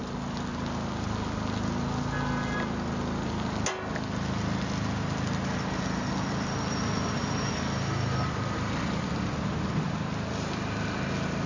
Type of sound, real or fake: real